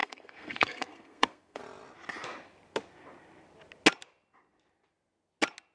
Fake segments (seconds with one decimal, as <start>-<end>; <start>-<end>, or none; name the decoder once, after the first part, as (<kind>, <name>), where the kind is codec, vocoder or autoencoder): 0.0-1.6 (codec, SNAC)